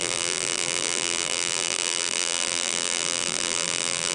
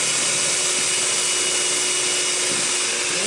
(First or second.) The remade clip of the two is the first